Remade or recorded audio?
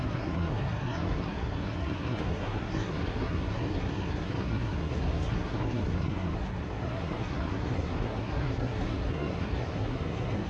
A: remade